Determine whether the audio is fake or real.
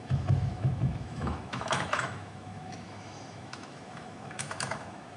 fake